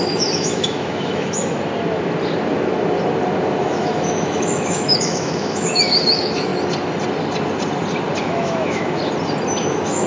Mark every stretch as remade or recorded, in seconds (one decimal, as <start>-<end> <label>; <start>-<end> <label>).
0.0-1.6 remade; 1.6-3.6 recorded; 3.6-6.5 remade; 6.5-8.2 recorded; 8.2-9.0 remade; 9.0-9.7 recorded; 9.7-10.1 remade